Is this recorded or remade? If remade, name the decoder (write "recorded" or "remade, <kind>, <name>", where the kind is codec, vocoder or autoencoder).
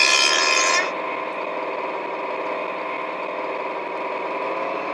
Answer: recorded